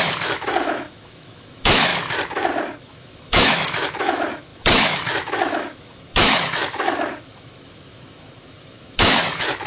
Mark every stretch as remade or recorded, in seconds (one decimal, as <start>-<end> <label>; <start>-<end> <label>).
0.0-1.9 remade; 1.9-2.8 recorded; 2.8-9.7 remade